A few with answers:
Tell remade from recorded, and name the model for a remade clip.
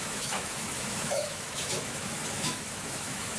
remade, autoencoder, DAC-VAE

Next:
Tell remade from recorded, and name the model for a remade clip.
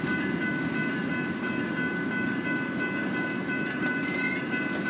recorded